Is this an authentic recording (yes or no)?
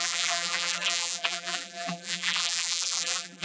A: no